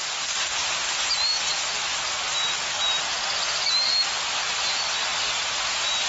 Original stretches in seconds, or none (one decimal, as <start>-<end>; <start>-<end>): 0.0-6.1